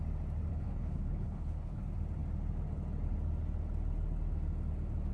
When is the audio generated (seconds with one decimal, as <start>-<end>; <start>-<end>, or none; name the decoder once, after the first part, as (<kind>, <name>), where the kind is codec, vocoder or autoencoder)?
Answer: 0.5-1.8 (codec, HILCodec)